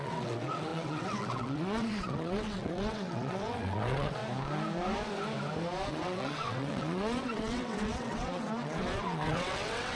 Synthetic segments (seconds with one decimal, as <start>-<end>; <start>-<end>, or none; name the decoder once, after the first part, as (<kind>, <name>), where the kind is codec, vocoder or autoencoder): 0.0-4.2 (vocoder, WaveNeXt); 5.9-10.0